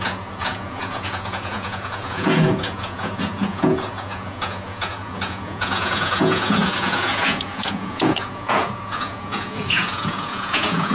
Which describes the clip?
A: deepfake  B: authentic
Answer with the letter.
A